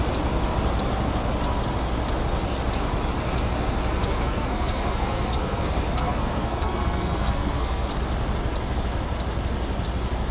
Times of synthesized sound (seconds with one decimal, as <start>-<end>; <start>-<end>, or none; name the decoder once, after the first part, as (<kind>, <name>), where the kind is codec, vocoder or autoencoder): 4.0-7.9 (codec, SNAC)